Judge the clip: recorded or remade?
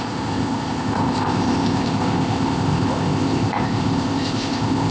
remade